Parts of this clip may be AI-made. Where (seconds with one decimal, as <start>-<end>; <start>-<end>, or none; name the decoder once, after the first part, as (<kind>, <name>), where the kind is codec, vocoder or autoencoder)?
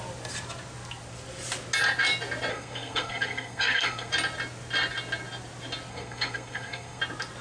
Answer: 2.5-4.1 (codec, SNAC); 5.9-7.0